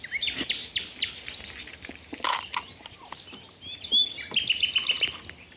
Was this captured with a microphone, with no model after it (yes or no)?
yes